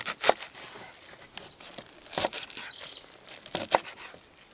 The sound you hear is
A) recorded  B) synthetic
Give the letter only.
A